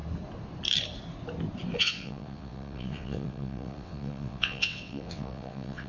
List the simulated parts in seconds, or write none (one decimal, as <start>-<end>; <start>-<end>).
1.8-5.9

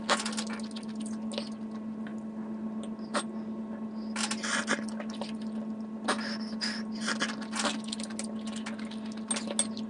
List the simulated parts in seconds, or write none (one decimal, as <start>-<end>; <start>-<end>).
none

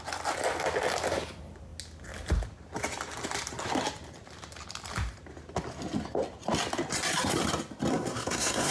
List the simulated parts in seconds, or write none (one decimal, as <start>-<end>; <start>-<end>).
7.9-8.7

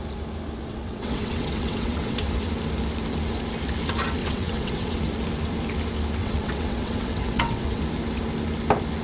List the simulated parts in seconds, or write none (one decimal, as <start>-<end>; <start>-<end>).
0.7-2.5; 4.2-5.0; 6.2-7.8

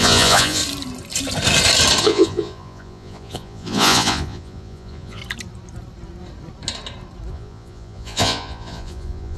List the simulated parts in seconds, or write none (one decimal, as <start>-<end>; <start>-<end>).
0.0-0.6; 2.0-5.2; 7.3-9.4

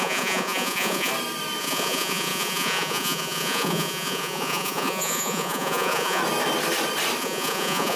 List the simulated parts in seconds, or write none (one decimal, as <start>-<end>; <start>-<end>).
0.0-1.1; 1.6-6.2; 7.2-8.0